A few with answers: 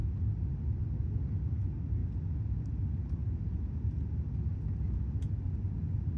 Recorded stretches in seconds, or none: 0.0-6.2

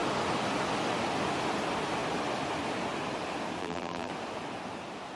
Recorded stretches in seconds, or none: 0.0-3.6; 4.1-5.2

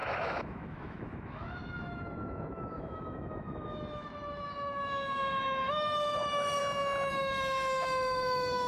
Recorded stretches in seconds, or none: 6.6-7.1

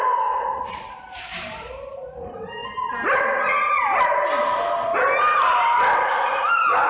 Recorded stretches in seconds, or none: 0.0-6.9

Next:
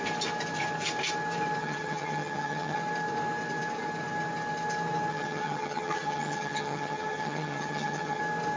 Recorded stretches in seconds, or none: 0.0-1.6; 2.8-5.1; 8.2-8.6

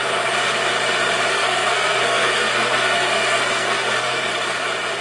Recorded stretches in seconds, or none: 0.0-1.3; 4.3-5.0

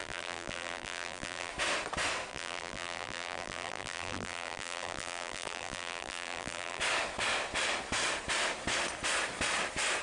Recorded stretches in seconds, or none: 1.5-2.3; 6.8-10.0